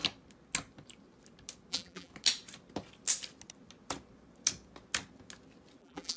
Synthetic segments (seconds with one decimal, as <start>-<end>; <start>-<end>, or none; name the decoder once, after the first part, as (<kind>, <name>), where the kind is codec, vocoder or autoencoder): 1.7-2.1 (vocoder, BigVGAN v2); 5.8-6.2

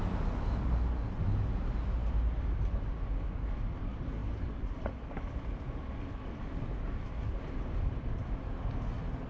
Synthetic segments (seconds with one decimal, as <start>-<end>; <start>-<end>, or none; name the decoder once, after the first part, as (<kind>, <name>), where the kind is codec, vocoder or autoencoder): none

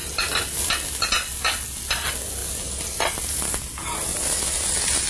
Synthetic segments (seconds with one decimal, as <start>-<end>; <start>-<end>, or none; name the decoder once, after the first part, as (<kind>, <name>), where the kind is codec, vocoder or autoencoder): 0.0-0.7 (vocoder, BigVGAN v2); 2.4-3.3; 4.1-5.1

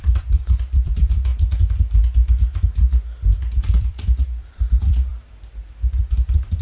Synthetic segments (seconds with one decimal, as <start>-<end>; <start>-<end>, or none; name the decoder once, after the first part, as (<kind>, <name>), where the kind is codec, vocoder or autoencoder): 0.0-1.3 (vocoder, BigVGAN v2); 3.6-5.1; 6.1-6.6